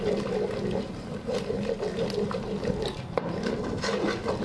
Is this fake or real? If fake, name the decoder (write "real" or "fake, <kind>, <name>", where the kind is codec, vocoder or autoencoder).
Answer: real